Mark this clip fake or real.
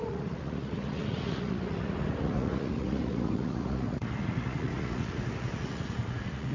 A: fake